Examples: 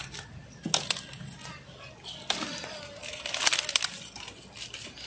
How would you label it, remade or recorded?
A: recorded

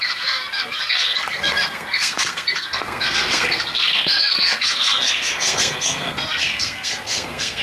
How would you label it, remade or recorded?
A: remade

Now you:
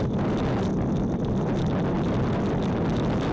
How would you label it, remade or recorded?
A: recorded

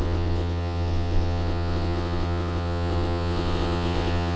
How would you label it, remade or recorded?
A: remade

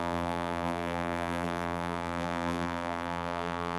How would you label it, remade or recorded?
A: remade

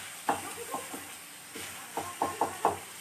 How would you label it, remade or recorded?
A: recorded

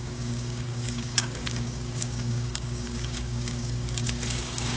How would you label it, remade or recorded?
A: remade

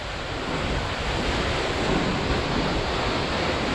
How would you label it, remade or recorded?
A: recorded